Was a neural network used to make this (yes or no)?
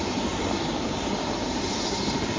yes